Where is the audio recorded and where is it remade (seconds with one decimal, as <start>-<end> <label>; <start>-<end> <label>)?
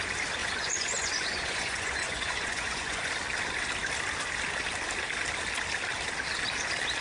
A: 0.0-0.4 recorded; 0.4-3.1 remade; 3.1-7.0 recorded